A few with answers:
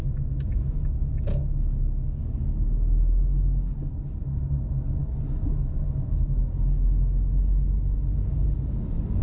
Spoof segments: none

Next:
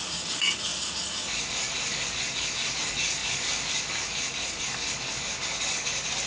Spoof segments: 0.0-6.3 (codec, DAC)

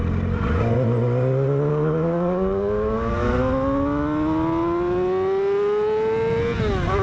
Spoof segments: 1.7-3.4 (codec, DAC)

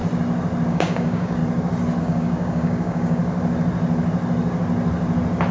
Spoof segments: 0.7-1.4 (codec, DAC); 2.0-3.2

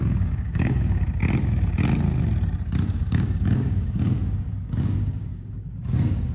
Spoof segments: 0.0-1.2 (codec, DAC); 2.8-6.3

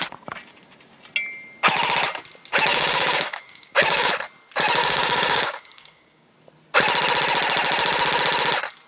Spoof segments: 2.7-4.1 (codec, DAC); 4.8-6.3